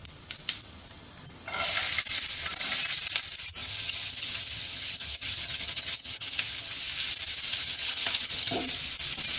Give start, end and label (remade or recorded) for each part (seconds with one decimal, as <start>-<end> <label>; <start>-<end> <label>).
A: 0.0-3.6 recorded; 3.6-6.8 remade; 6.8-7.5 recorded; 7.5-8.6 remade; 8.6-9.4 recorded